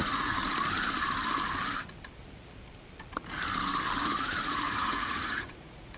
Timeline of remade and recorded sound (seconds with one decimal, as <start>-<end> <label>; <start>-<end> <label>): 0.0-0.4 remade; 0.4-4.0 recorded; 4.0-6.0 remade